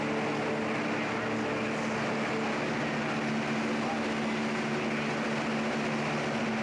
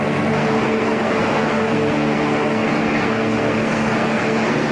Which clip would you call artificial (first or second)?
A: second